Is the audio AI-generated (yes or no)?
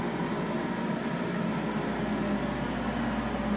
no